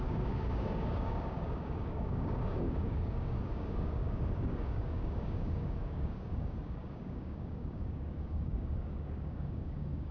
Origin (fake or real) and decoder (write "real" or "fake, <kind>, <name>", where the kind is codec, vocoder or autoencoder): fake, codec, DAC